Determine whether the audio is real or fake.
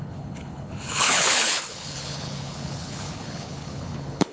fake